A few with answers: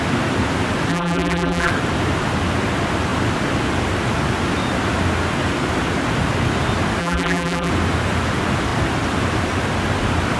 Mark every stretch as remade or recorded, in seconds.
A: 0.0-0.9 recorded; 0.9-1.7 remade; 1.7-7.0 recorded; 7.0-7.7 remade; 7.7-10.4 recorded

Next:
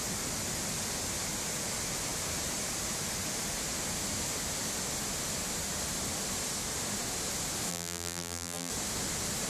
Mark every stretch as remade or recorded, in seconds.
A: 0.0-7.7 recorded; 7.7-8.7 remade; 8.7-9.5 recorded

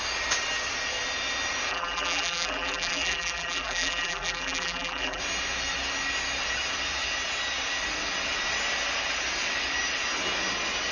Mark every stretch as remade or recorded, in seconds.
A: 0.0-1.7 recorded; 1.7-5.2 remade; 5.2-10.9 recorded

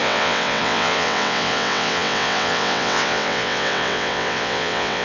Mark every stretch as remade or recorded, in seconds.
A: 0.0-5.0 remade

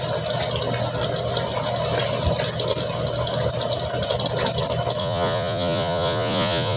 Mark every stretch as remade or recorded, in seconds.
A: 0.0-5.0 recorded; 5.0-6.8 remade

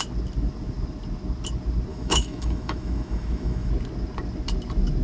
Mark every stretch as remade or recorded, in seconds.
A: 0.0-1.9 recorded; 1.9-3.7 remade; 3.7-5.0 recorded

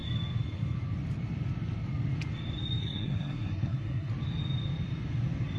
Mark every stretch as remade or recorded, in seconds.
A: 0.0-2.8 recorded; 2.8-4.1 remade; 4.1-5.6 recorded